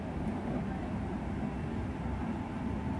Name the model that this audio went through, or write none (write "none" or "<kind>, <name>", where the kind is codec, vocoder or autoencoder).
none